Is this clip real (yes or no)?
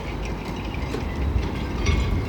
yes